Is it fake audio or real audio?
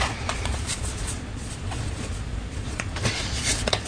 fake